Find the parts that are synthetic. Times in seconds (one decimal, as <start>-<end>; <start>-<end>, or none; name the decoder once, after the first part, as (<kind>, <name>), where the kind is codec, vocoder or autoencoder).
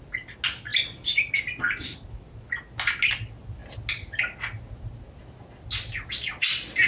none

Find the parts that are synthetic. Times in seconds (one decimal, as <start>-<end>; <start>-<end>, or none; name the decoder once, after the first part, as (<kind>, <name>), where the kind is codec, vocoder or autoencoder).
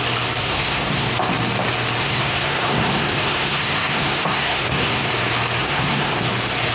0.4-1.1 (codec, SNAC); 2.0-5.1; 5.6-6.2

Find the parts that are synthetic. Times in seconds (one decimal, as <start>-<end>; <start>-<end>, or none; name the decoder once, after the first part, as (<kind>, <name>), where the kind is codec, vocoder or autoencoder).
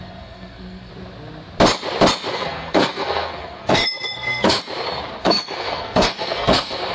0.0-0.9 (codec, SNAC); 2.3-4.6; 5.2-6.9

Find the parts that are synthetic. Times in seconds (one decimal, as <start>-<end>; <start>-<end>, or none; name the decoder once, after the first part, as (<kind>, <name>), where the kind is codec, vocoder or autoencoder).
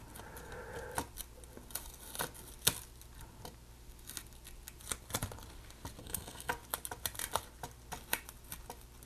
6.0-6.5 (codec, SNAC)